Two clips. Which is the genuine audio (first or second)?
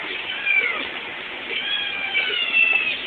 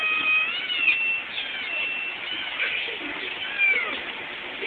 second